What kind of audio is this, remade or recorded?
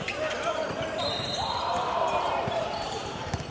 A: remade